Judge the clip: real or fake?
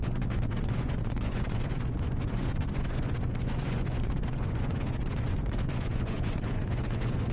fake